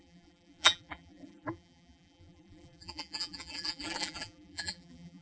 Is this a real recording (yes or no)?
no